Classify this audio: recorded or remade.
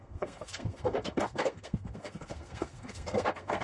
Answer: remade